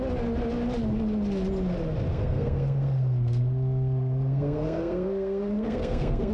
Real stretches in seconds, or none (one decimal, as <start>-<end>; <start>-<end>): 0.0-2.1